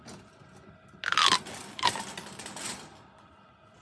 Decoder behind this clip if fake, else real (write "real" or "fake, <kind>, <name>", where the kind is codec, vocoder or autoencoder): real